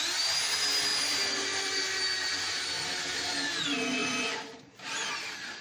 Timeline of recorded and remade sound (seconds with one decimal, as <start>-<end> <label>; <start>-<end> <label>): 0.0-0.9 recorded; 0.9-3.6 remade; 3.6-4.0 recorded; 4.0-5.6 remade